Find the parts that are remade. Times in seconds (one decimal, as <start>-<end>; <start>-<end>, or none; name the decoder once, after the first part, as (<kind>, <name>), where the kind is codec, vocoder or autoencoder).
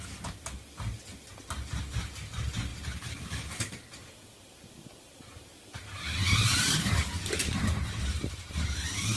5.5-9.2 (vocoder, BigVGAN v2)